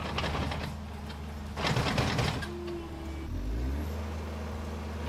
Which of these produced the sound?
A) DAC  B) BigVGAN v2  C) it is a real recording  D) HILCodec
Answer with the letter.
C